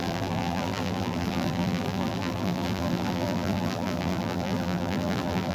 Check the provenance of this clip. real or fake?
fake